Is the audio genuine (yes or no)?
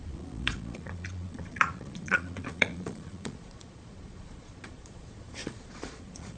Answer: no